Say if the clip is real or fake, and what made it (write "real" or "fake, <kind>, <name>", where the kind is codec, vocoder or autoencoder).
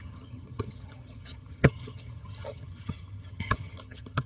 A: fake, vocoder, HiFi-GAN